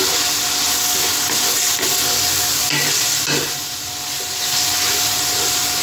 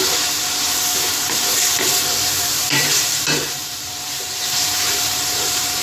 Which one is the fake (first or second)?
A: second